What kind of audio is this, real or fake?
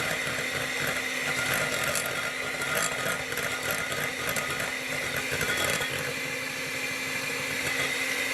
real